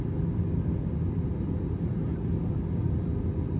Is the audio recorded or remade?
recorded